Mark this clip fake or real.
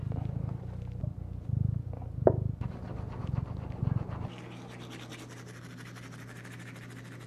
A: real